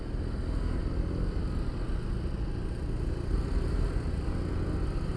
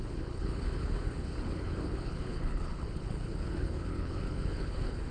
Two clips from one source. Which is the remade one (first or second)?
second